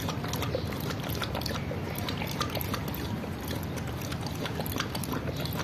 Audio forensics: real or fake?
real